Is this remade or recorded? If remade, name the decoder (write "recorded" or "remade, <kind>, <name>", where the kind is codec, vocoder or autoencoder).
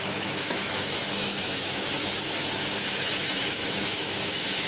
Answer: remade, autoencoder, DAC-VAE